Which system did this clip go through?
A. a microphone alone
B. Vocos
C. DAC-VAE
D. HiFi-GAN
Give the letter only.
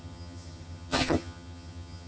D